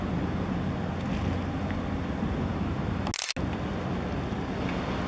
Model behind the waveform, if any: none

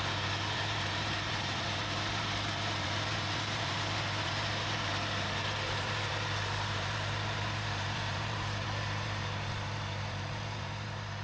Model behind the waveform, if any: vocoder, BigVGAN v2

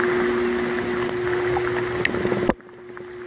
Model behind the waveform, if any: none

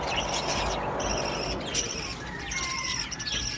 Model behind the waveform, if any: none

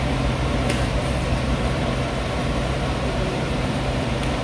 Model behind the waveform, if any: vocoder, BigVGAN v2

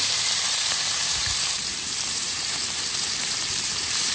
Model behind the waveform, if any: vocoder, BigVGAN v2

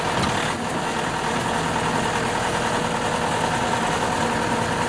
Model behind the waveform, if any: none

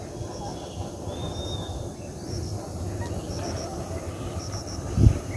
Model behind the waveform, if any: vocoder, BigVGAN v2